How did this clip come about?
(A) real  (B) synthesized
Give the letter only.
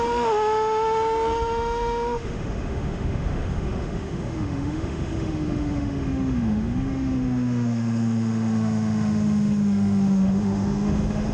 B